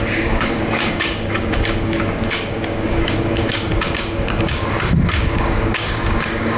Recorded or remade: remade